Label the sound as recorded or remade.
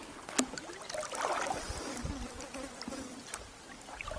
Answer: recorded